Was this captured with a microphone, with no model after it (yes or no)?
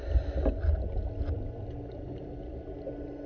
yes